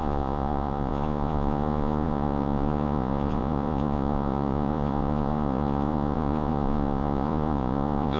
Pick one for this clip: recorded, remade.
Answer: remade